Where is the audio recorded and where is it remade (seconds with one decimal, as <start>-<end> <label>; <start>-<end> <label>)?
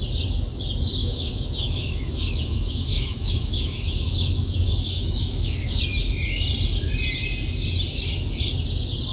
0.0-1.0 recorded; 1.0-5.8 remade; 5.8-9.1 recorded